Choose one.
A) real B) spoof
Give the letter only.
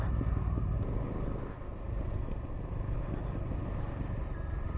A